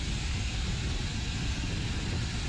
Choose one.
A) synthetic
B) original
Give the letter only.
B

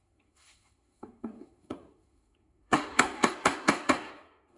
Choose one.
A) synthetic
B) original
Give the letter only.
A